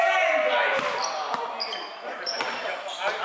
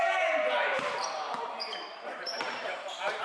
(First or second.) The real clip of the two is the first